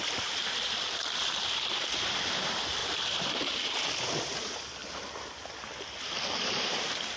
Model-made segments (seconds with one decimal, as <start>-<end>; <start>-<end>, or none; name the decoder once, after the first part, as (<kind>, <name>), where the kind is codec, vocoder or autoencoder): 0.0-2.8 (vocoder, BigVGAN v2); 4.1-7.2